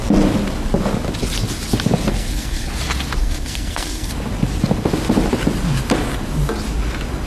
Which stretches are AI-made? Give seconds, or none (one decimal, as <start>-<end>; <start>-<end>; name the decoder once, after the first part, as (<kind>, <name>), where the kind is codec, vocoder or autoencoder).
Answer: 2.1-2.7 (codec, SNAC); 3.2-4.1